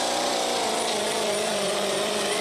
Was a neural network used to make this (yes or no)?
yes